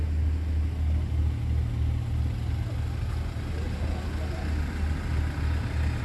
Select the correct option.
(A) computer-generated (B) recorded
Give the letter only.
B